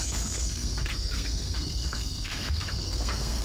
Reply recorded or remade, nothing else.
remade